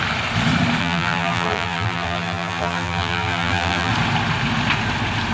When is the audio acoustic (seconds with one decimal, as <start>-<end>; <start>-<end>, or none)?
0.0-0.8; 3.9-5.3